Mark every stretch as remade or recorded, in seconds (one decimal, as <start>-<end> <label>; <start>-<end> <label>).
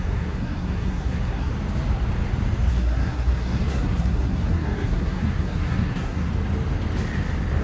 0.0-1.5 remade; 1.5-2.7 recorded; 2.7-6.3 remade; 6.3-7.6 recorded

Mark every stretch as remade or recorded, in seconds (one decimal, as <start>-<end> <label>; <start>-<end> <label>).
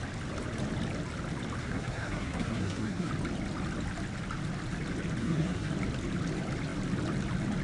0.0-1.6 recorded; 1.6-3.1 remade; 3.1-5.2 recorded; 5.2-5.7 remade; 5.7-7.6 recorded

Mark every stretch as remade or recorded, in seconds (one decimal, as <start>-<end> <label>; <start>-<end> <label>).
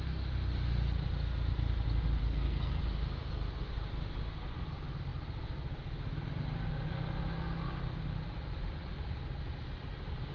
0.0-2.2 recorded; 2.2-2.8 remade; 2.8-10.3 recorded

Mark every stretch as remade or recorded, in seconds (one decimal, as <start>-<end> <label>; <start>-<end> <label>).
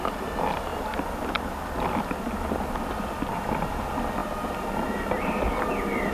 0.0-6.1 recorded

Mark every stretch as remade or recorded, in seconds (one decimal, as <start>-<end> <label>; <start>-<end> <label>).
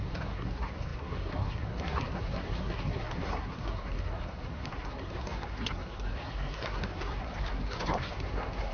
0.0-8.7 remade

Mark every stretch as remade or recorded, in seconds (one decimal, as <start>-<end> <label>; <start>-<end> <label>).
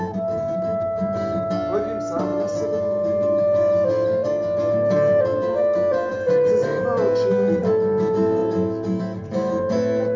0.0-10.2 recorded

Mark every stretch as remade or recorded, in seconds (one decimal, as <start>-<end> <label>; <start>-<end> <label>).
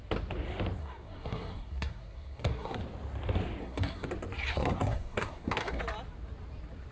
0.0-0.8 recorded; 0.8-2.8 remade; 2.8-3.6 recorded; 3.6-4.1 remade; 4.1-4.5 recorded; 4.5-5.8 remade; 5.8-6.9 recorded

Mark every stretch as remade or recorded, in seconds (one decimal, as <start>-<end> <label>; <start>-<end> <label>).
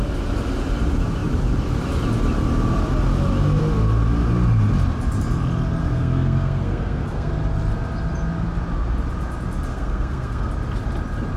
0.0-5.8 recorded; 5.8-7.3 remade; 7.3-9.7 recorded; 9.7-10.5 remade; 10.5-11.4 recorded